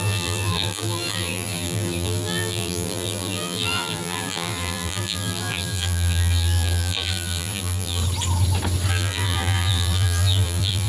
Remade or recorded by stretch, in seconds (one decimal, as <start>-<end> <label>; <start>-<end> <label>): 0.0-8.0 remade; 8.0-8.9 recorded; 8.9-10.9 remade